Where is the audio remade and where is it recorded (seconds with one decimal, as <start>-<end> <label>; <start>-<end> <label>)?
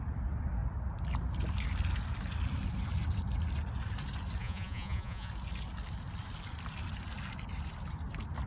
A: 0.0-4.4 recorded; 4.4-5.3 remade; 5.3-8.5 recorded